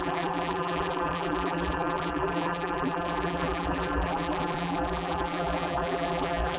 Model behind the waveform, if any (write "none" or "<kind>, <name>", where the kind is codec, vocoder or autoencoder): vocoder, BigVGAN v2